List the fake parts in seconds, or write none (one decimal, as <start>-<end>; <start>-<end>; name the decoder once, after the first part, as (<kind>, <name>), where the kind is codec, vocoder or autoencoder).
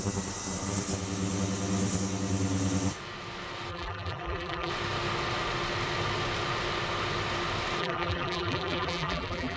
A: 3.7-4.7 (vocoder, BigVGAN v2); 7.8-9.6